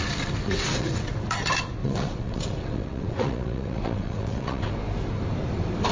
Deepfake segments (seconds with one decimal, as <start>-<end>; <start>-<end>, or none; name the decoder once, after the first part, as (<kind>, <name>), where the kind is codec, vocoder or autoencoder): 0.4-1.1 (vocoder, WaveNeXt); 1.8-4.7